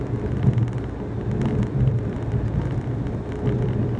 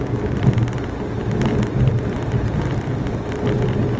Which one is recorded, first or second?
first